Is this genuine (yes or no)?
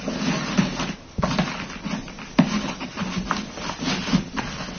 yes